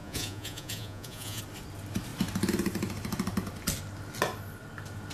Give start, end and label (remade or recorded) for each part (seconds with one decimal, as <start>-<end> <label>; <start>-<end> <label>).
0.0-1.4 remade; 1.4-5.1 recorded